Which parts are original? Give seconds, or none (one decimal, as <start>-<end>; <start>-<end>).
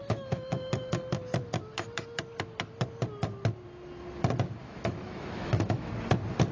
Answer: 1.0-4.6; 5.9-6.5